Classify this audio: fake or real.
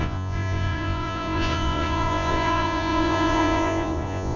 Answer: fake